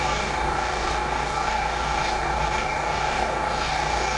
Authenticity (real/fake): fake